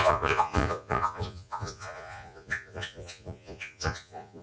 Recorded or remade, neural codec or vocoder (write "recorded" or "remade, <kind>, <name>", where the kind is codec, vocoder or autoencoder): remade, vocoder, Vocos